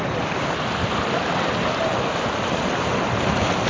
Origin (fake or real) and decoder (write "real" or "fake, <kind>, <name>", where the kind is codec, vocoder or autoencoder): real